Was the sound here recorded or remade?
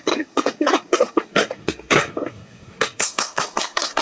remade